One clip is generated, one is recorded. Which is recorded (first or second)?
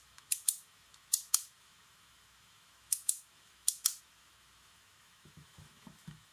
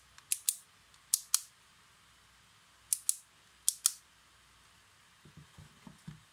second